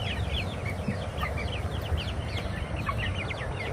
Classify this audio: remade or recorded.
remade